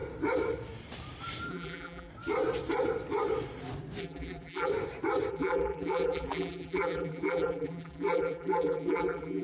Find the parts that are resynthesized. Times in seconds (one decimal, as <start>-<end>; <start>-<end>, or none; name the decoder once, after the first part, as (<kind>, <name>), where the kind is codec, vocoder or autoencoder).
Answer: 1.5-2.1 (vocoder, BigVGAN v2); 4.0-4.7; 5.3-9.4